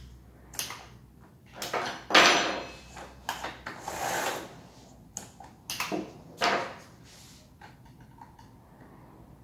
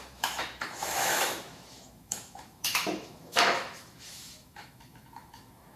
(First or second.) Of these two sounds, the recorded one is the first